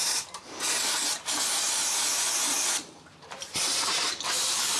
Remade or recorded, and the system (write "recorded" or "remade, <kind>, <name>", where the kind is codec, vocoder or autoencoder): remade, vocoder, BigVGAN v2